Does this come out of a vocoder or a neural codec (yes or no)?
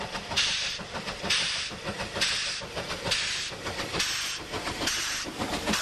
no